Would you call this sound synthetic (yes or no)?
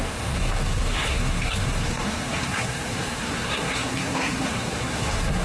yes